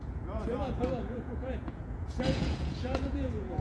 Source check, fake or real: fake